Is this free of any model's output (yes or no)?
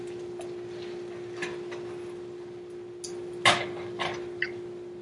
yes